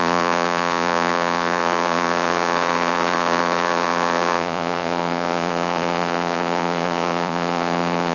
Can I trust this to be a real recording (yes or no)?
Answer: no